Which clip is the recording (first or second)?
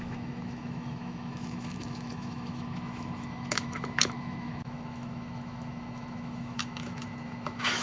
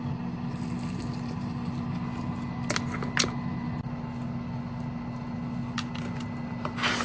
second